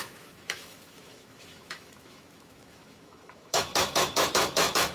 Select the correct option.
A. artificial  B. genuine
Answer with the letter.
A